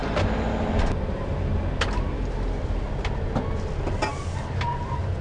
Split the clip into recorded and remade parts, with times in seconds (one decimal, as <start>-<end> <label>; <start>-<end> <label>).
0.0-5.2 recorded